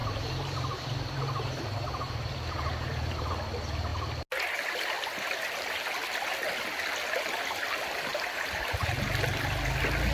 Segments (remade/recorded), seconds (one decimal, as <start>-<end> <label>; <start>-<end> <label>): 0.0-3.3 remade; 3.3-8.1 recorded; 8.1-8.9 remade; 8.9-10.1 recorded